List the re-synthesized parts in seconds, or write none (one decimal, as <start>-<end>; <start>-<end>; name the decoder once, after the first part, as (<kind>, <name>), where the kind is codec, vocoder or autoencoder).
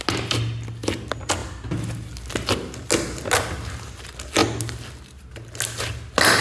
none